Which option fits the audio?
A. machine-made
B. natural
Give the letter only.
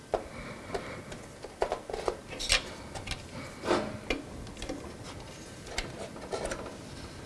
B